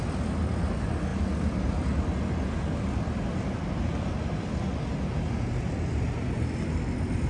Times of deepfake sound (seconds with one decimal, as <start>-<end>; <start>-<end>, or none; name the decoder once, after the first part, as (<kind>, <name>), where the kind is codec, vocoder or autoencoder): none